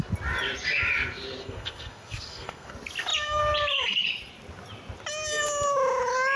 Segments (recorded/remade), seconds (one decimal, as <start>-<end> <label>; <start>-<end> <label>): 0.0-1.4 recorded; 1.4-2.7 remade; 2.7-6.4 recorded